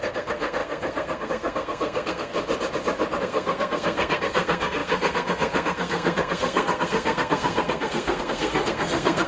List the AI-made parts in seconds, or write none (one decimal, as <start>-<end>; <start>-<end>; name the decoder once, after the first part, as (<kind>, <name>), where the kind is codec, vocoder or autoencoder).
0.0-2.3 (codec, SNAC); 3.2-9.3